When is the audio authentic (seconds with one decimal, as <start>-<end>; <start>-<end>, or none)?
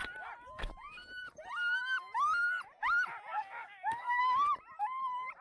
0.0-3.3; 4.2-5.4